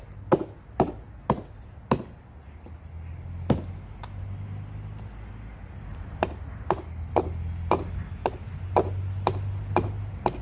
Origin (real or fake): real